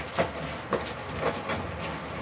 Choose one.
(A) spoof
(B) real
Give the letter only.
B